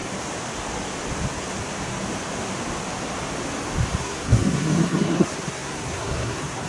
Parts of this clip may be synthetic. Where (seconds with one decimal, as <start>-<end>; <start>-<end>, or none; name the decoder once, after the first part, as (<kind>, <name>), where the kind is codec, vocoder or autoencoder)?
4.0-6.7 (codec, SNAC)